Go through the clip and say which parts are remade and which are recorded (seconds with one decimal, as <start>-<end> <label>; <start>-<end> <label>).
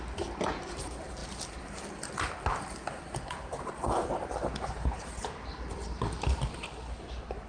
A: 0.0-1.2 remade; 1.2-5.5 recorded; 5.5-7.5 remade